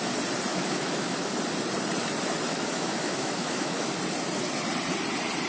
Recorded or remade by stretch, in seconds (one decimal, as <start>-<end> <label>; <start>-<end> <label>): 0.0-0.5 recorded; 0.5-1.3 remade; 1.3-2.5 recorded; 2.5-3.9 remade; 3.9-5.5 recorded